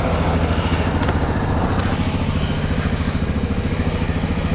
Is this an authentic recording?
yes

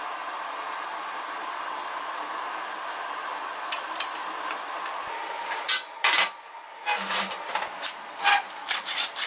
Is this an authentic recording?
yes